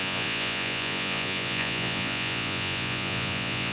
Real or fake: fake